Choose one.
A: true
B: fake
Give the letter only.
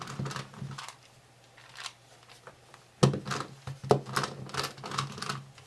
A